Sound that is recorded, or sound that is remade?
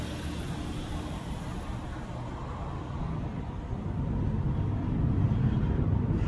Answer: recorded